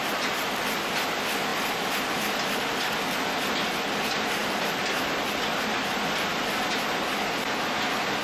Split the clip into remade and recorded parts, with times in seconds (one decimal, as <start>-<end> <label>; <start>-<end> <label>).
0.0-8.2 recorded